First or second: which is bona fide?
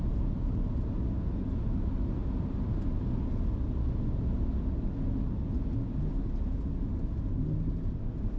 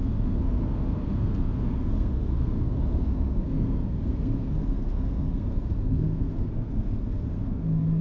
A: first